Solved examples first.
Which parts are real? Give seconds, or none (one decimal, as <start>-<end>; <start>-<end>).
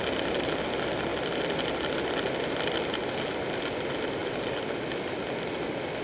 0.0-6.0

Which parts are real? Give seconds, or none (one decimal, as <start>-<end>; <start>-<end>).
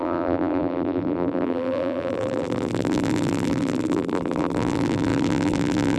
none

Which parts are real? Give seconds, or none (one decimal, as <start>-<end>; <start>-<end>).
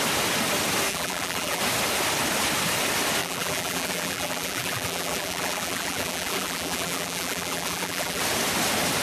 0.0-0.9; 1.6-3.2; 8.2-9.0